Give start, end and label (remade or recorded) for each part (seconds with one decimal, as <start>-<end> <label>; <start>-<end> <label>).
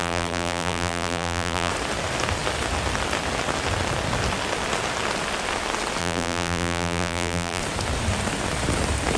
0.0-1.7 remade; 1.7-6.0 recorded; 6.0-7.6 remade; 7.6-9.2 recorded